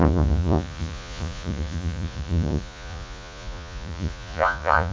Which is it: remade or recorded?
remade